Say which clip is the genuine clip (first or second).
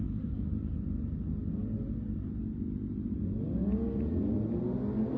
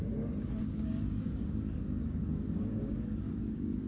first